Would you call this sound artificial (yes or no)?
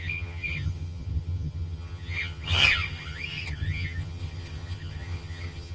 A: yes